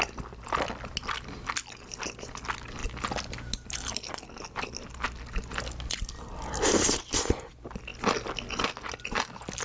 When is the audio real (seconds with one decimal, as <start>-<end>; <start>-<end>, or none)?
0.0-9.6